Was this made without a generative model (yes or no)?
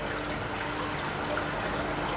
yes